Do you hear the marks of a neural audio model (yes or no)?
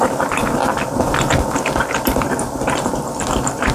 yes